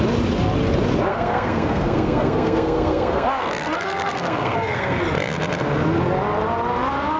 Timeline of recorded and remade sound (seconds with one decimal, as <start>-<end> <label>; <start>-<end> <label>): 0.0-1.1 recorded; 1.1-5.0 remade; 5.0-7.2 recorded